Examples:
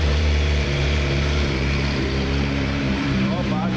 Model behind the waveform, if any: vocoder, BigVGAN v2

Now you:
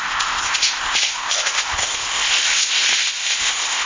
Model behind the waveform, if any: codec, ZipCodec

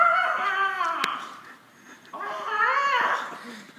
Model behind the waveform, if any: none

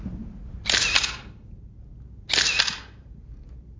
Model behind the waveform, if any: none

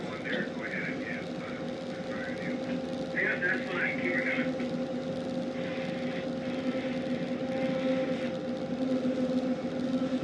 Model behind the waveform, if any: none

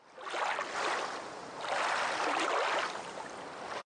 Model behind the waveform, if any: none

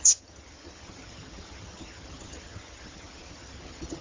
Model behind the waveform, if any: vocoder, HiFi-GAN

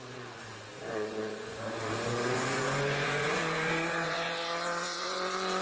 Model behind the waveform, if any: vocoder, Vocos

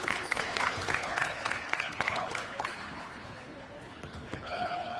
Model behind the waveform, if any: codec, HILCodec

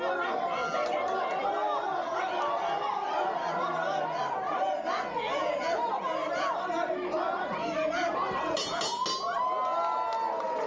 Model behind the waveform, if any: none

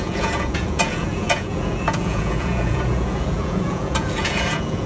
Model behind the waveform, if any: vocoder, Vocos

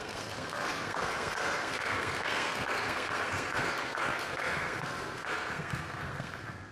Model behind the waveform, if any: codec, SNAC